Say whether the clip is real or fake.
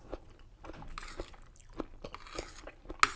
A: real